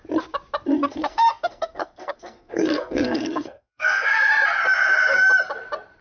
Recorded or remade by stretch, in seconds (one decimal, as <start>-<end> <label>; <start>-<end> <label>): 0.0-0.7 recorded; 0.7-4.3 remade; 4.3-6.0 recorded